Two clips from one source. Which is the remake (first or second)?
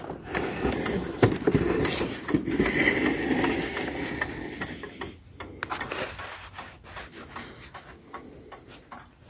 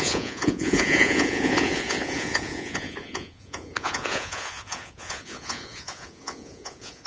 second